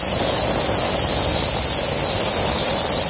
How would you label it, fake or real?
real